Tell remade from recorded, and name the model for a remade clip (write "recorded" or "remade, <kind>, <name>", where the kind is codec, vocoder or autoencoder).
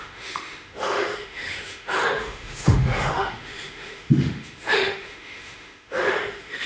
remade, autoencoder, DAC-VAE